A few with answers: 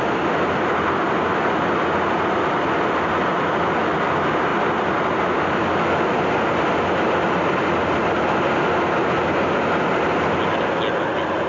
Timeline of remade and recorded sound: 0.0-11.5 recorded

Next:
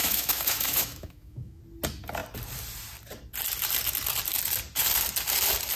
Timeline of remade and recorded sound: 0.0-1.6 remade; 1.6-5.8 recorded

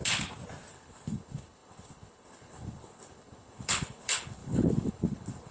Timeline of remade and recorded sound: 0.0-0.7 recorded; 0.7-5.5 remade

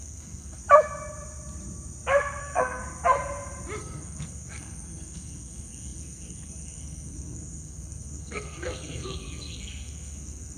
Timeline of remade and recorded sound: 0.0-0.6 remade; 0.6-2.4 recorded; 2.4-2.8 remade; 2.8-3.8 recorded; 3.8-10.6 remade

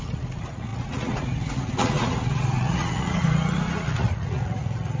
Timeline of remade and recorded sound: 0.0-5.0 remade

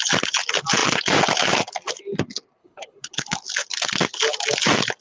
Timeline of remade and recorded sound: 0.0-2.6 recorded; 2.6-3.5 remade; 3.5-5.0 recorded